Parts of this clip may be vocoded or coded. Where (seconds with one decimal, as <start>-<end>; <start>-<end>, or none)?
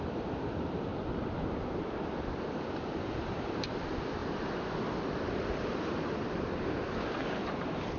0.0-0.9; 1.8-4.2; 5.3-8.0